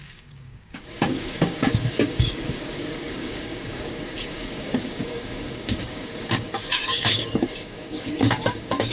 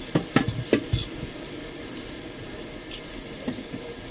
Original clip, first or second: second